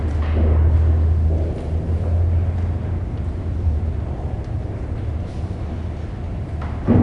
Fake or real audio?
real